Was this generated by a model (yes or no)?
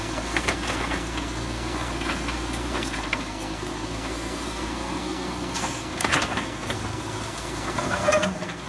yes